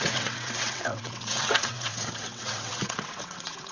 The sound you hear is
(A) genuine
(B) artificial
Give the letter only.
B